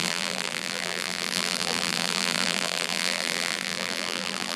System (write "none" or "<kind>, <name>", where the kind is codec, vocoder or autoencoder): vocoder, BigVGAN v2